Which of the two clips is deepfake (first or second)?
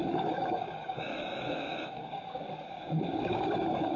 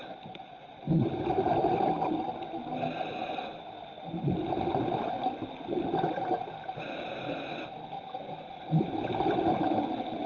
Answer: first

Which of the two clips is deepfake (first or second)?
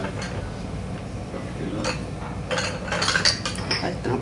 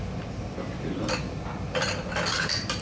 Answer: second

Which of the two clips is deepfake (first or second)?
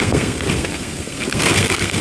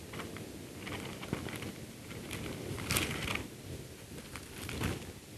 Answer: first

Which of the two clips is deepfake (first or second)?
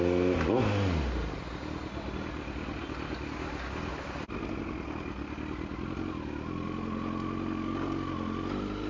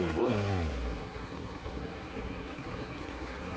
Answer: second